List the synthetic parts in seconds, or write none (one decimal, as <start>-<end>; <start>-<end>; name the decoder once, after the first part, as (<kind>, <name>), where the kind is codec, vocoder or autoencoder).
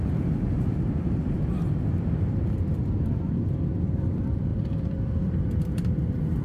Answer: 0.0-6.4 (vocoder, BigVGAN v2)